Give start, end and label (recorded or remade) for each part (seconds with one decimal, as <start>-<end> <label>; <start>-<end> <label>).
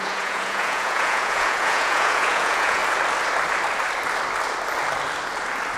0.0-2.8 remade; 2.8-5.8 recorded